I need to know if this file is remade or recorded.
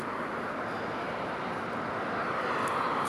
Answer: recorded